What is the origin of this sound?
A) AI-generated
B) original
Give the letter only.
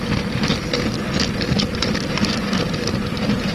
B